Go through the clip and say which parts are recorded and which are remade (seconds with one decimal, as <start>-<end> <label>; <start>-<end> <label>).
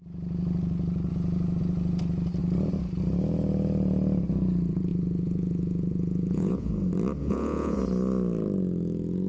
0.0-4.9 recorded; 4.9-6.7 remade; 6.7-7.2 recorded; 7.2-7.8 remade; 7.8-9.3 recorded